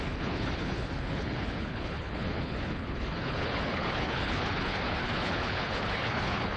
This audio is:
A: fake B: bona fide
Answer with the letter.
A